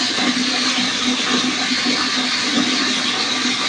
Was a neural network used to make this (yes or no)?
no